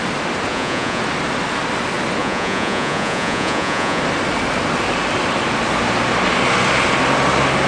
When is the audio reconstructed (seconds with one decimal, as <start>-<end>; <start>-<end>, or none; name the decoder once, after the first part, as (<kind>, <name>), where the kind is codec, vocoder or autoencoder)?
0.5-1.0 (vocoder, Vocos); 2.2-4.0